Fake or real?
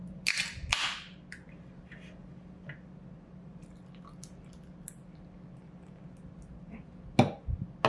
real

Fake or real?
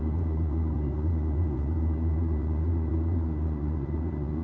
fake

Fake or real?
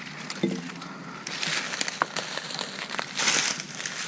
real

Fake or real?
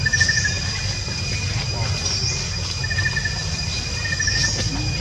real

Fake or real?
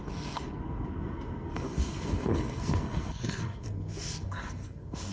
fake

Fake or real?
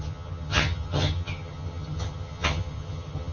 fake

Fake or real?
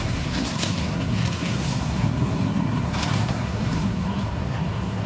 fake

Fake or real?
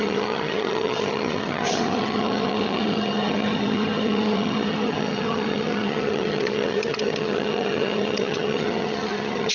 fake